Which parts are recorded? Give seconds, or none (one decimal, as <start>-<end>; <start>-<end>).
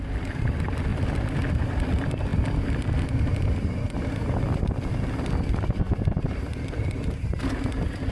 0.0-8.1